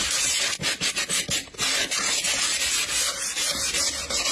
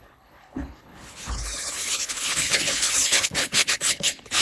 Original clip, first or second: first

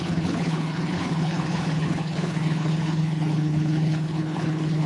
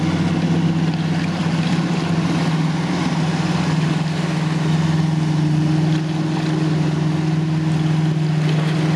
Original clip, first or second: second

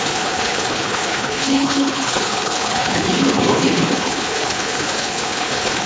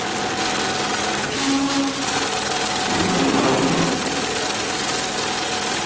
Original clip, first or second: second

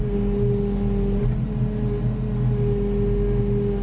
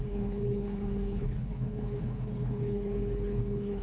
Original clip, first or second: first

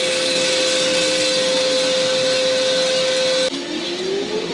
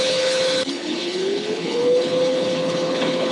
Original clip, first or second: first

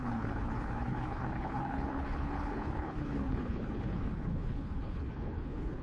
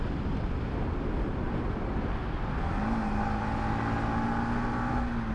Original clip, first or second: second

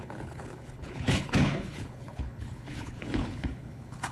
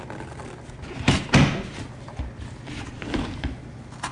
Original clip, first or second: second